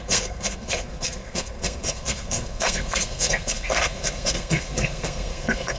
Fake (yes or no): yes